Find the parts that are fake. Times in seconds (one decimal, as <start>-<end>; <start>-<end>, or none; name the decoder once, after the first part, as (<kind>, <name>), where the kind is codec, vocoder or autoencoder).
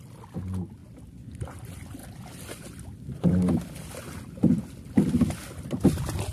none